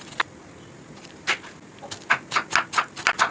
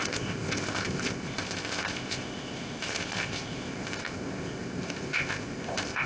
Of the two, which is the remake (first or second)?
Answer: second